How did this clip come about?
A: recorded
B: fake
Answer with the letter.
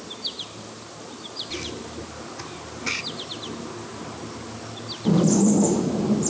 A